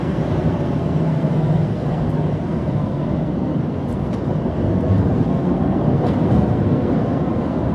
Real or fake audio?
fake